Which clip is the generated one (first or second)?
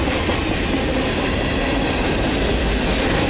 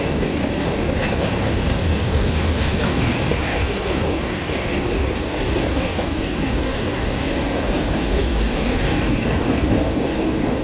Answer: second